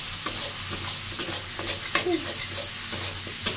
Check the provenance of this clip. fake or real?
real